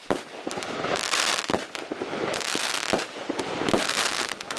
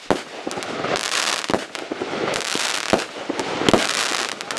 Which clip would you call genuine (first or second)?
second